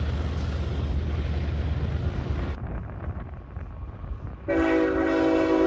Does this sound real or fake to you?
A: real